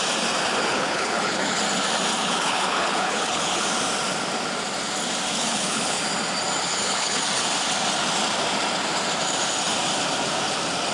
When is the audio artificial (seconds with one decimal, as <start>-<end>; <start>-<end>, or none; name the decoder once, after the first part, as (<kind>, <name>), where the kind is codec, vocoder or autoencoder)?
0.7-1.6 (codec, HILCodec); 2.2-3.6; 5.4-6.0; 6.6-7.2